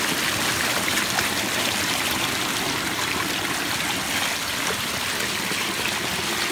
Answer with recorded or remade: recorded